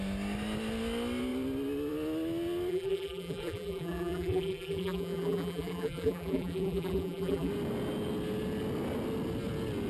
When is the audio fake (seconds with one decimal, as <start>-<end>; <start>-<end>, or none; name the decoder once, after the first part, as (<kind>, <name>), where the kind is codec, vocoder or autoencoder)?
2.7-7.5 (vocoder, BigVGAN v2)